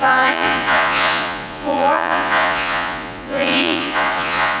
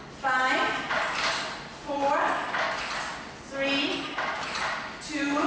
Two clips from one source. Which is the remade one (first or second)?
first